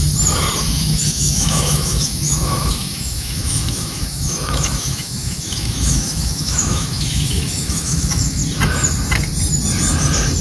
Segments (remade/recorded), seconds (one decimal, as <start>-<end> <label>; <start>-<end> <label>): 0.0-0.7 recorded; 0.7-8.4 remade; 8.4-10.4 recorded